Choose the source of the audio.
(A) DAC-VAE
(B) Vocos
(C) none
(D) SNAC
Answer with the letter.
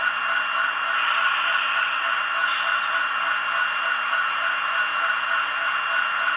C